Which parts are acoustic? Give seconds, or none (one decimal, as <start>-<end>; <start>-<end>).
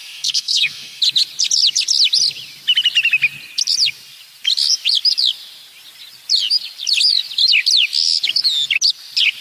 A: 1.0-9.4